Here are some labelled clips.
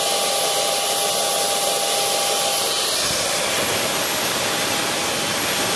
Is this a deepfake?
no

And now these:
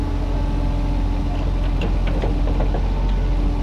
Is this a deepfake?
no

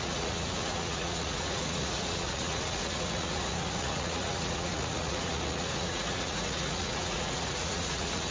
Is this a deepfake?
yes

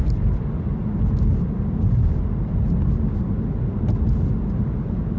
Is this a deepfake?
no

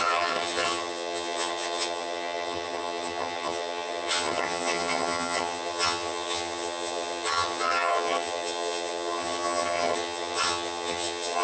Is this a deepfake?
yes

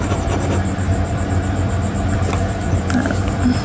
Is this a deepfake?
yes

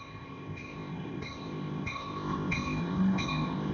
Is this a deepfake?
yes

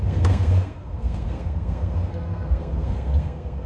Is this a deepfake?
yes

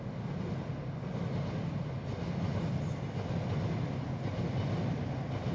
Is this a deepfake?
no